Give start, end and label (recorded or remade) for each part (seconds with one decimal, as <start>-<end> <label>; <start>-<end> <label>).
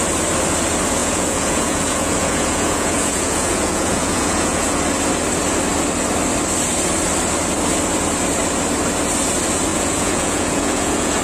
0.0-1.0 recorded; 1.0-4.8 remade; 4.8-9.7 recorded; 9.7-11.2 remade